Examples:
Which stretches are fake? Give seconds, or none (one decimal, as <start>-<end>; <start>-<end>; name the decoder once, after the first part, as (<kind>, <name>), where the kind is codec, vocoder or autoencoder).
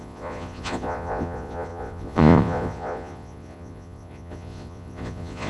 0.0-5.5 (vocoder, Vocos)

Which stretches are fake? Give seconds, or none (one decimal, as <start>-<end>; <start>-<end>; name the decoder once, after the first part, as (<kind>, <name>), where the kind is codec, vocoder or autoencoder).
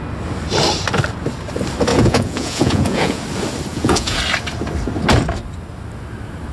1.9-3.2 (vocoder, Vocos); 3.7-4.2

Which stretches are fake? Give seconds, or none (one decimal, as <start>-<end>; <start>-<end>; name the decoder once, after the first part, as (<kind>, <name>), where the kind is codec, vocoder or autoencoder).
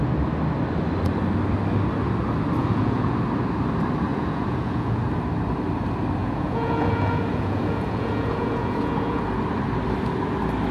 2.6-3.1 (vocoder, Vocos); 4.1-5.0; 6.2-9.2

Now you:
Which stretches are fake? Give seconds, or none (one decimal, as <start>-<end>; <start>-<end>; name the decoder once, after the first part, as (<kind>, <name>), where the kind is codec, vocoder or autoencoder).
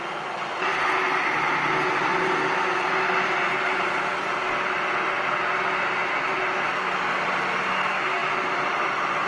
none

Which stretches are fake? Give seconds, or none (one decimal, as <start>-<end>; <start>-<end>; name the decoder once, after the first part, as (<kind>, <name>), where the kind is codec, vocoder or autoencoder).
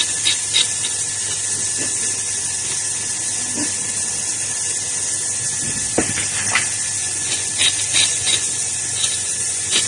7.0-7.5 (vocoder, Vocos); 8.1-9.9